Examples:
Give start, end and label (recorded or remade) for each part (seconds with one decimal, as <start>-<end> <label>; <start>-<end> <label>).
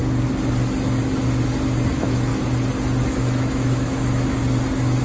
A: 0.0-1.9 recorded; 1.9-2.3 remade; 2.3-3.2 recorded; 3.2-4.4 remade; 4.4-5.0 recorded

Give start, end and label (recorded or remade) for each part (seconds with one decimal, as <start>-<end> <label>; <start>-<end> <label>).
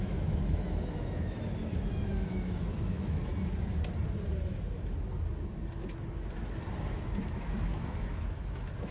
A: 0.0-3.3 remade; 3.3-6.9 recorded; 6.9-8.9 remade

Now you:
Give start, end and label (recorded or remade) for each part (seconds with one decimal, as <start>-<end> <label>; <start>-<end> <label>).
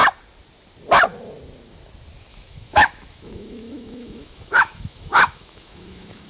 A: 0.0-2.3 recorded; 2.3-6.3 remade